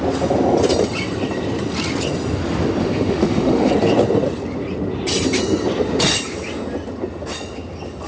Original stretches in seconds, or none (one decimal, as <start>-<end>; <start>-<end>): 0.0-2.8; 3.7-8.1